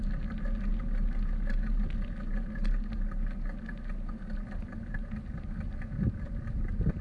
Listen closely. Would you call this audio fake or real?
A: real